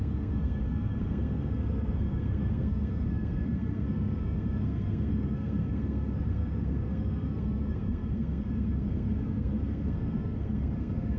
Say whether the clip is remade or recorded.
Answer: remade